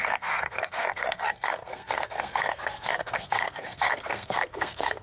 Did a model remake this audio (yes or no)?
yes